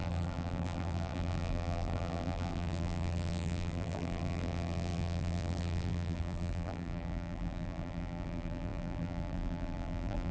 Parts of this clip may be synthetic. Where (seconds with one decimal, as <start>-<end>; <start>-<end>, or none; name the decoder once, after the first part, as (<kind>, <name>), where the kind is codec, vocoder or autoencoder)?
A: 0.0-10.3 (vocoder, BigVGAN v2)